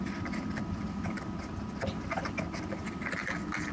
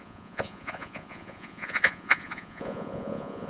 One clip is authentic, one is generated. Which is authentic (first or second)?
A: first